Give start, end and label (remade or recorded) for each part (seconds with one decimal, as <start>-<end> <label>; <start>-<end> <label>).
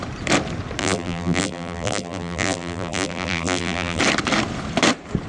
0.0-0.8 recorded; 0.8-4.0 remade; 4.0-5.3 recorded